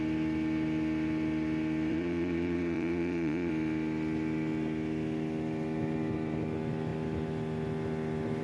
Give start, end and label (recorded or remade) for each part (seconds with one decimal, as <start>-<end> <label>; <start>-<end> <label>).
0.0-1.9 recorded; 1.9-3.5 remade; 3.5-8.4 recorded